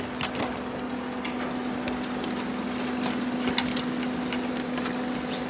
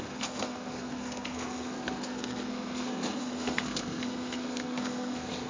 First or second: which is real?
first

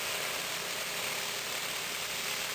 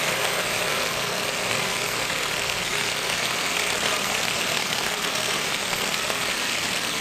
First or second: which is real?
first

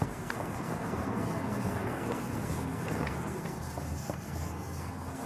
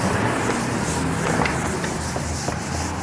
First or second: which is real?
second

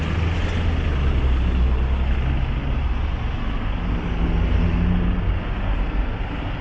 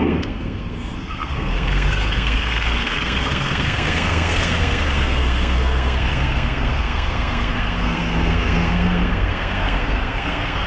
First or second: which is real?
first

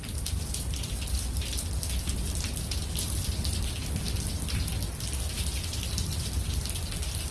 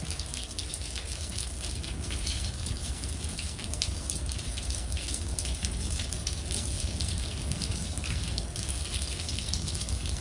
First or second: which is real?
first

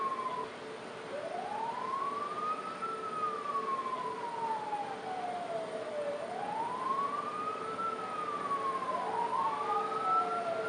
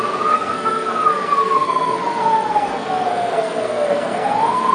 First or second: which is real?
first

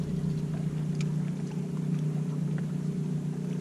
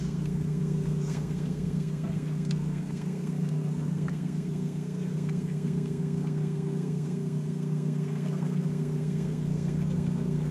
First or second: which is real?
first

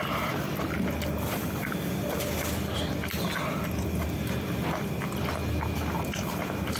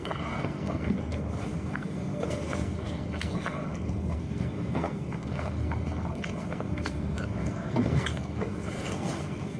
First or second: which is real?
first